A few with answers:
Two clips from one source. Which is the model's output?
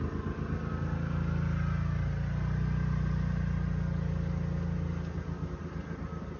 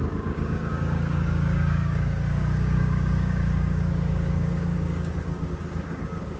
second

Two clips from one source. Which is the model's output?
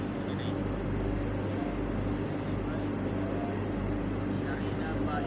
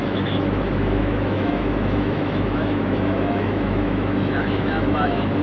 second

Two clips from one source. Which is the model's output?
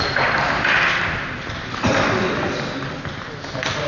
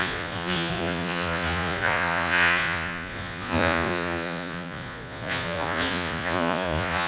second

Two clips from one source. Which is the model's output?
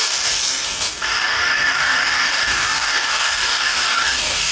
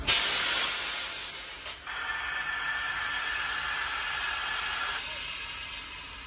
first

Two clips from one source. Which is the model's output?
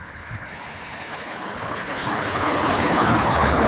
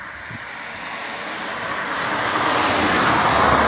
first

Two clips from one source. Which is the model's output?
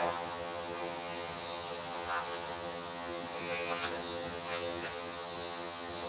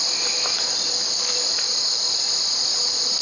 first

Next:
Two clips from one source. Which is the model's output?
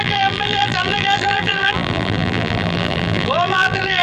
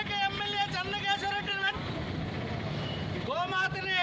first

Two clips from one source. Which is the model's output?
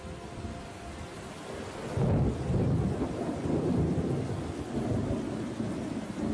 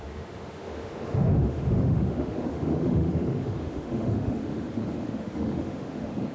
second